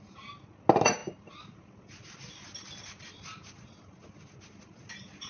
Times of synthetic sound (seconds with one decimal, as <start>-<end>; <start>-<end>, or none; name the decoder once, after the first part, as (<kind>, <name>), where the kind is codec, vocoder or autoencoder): none